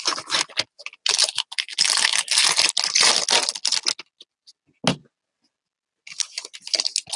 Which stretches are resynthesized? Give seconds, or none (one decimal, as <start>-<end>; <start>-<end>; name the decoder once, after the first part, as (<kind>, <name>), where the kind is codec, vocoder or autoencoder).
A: none